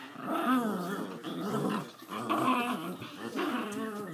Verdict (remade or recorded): recorded